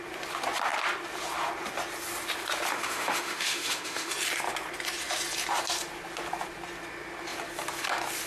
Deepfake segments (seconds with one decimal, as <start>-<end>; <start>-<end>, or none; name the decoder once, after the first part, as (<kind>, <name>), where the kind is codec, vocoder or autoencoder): 2.7-4.1 (autoencoder, DAC-VAE)